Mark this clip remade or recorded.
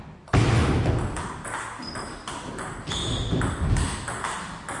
recorded